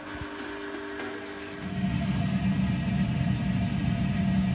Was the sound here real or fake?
real